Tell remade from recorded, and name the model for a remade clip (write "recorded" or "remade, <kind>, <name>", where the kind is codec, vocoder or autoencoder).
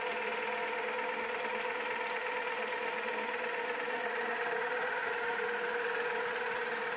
recorded